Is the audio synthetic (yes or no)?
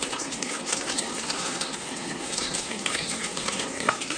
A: yes